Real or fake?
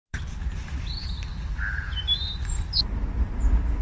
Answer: real